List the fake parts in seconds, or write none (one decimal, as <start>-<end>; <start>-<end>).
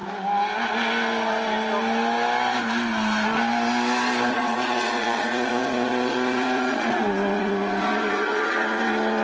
4.3-9.2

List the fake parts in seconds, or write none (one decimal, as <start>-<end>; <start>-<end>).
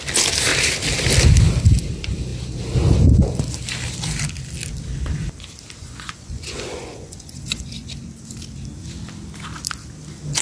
5.8-7.9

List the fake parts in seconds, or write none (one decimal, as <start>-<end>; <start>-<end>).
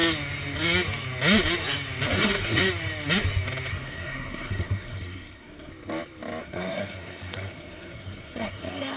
2.1-2.6; 3.7-5.7; 6.4-9.0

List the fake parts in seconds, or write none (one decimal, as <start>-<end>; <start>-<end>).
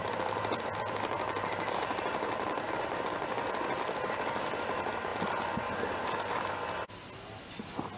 none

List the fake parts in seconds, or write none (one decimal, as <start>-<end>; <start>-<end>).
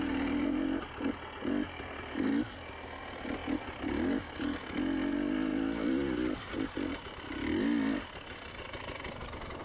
none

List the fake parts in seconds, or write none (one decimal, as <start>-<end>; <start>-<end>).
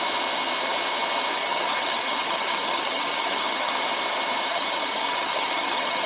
1.3-3.7; 4.5-6.1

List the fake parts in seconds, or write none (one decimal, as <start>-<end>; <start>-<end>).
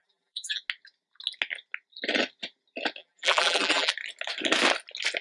0.0-0.6; 3.0-3.9